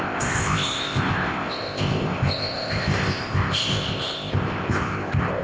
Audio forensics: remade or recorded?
remade